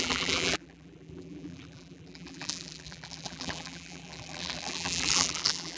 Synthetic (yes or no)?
yes